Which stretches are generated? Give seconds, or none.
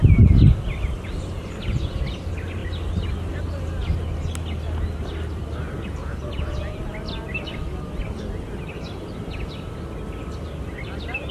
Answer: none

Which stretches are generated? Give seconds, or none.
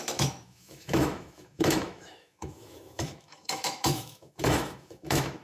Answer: 0.0-5.4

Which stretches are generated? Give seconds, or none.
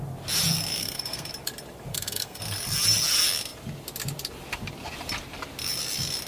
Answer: 0.8-1.3; 1.9-2.4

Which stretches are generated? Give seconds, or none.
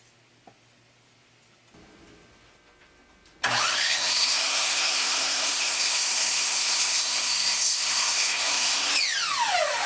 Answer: 3.7-8.9